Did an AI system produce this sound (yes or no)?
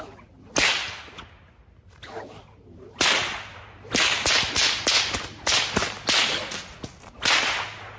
no